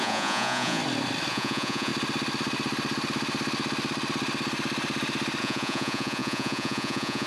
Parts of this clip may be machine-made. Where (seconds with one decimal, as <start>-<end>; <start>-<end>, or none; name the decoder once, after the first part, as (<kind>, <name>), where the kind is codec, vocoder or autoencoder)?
0.0-0.8 (vocoder, Vocos); 1.3-1.9; 5.4-7.3